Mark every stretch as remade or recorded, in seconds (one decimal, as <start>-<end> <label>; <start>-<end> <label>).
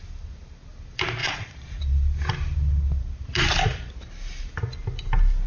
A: 0.0-1.2 recorded; 1.2-1.8 remade; 1.8-5.5 recorded